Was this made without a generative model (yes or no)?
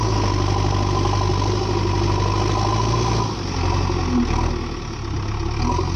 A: yes